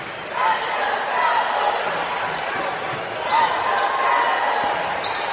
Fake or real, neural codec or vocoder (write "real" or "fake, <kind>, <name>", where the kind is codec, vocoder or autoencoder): real